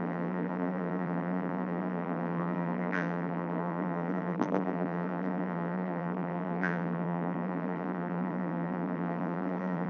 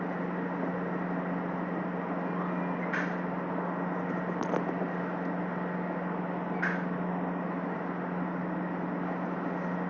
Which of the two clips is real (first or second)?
second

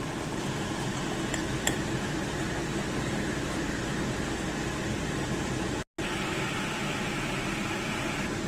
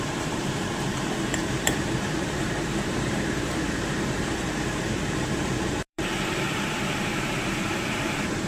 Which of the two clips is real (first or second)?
first